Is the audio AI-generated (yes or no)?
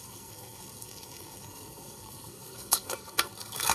yes